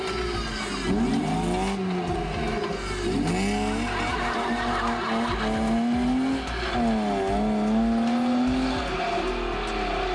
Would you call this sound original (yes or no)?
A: yes